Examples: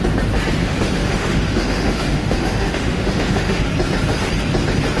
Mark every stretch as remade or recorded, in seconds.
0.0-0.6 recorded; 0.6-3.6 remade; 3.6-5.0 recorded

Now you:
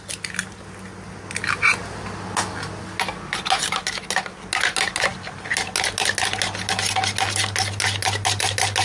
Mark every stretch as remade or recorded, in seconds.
0.0-8.8 recorded

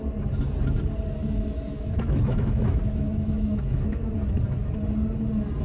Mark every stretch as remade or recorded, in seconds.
0.0-1.2 recorded; 1.2-4.1 remade; 4.1-5.6 recorded

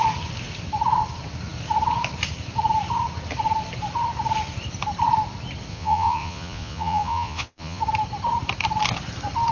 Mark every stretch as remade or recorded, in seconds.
0.0-5.7 recorded; 5.7-7.8 remade; 7.8-9.5 recorded

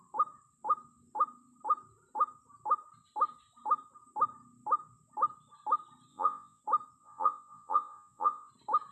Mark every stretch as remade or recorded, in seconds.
0.0-6.1 recorded; 6.1-6.6 remade; 6.6-7.0 recorded; 7.0-8.5 remade; 8.5-8.9 recorded

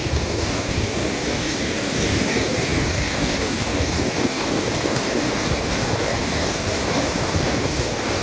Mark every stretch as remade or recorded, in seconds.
0.0-8.2 remade